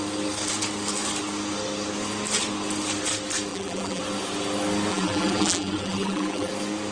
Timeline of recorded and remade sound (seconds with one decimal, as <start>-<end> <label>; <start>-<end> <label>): 0.0-3.5 recorded; 3.5-4.0 remade; 4.0-4.9 recorded; 4.9-6.5 remade; 6.5-6.9 recorded